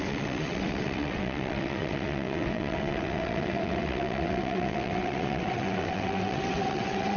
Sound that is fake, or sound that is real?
fake